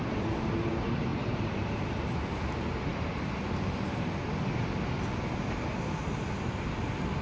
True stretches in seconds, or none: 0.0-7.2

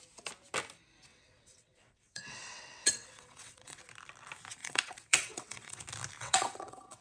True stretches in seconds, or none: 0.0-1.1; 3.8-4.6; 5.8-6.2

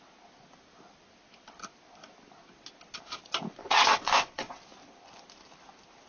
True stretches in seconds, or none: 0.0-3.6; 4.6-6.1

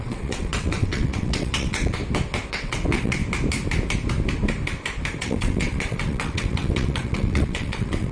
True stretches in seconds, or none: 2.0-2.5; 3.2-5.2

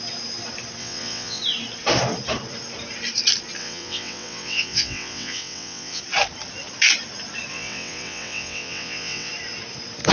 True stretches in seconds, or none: 0.0-0.8; 1.4-3.6; 6.0-7.5; 9.3-10.1

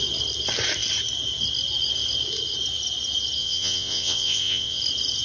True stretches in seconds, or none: 0.0-3.4; 4.8-5.2